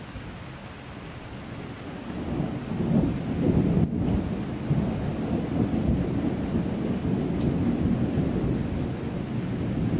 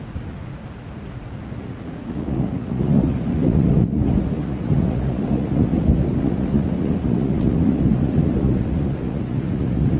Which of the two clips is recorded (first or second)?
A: first